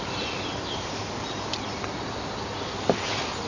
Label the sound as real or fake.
real